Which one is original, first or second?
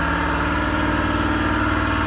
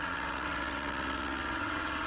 first